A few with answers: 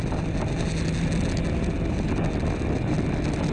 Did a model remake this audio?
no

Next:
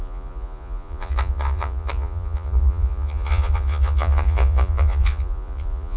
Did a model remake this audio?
yes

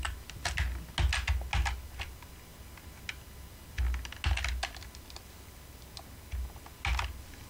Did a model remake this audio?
no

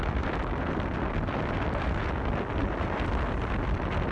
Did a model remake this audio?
no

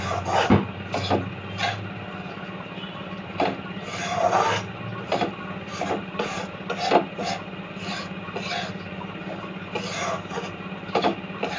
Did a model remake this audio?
no